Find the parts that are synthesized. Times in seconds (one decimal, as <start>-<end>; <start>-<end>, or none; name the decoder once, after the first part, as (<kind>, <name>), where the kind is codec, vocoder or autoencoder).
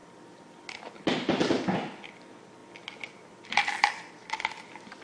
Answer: none